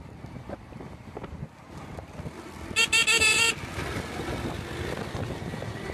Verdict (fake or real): real